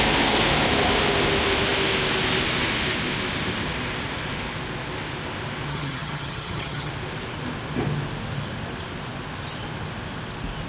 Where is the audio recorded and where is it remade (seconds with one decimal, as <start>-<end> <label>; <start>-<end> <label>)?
0.0-5.7 recorded; 5.7-6.9 remade; 6.9-10.7 recorded